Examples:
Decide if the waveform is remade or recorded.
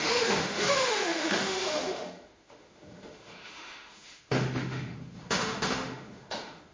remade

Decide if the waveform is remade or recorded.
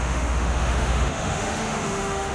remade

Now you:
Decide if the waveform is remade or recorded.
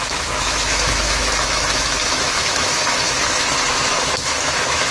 remade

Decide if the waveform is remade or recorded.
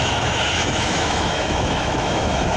remade